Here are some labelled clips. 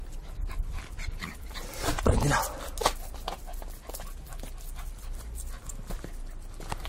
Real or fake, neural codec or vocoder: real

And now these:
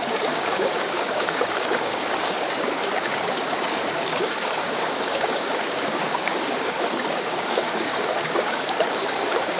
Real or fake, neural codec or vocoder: fake, codec, DAC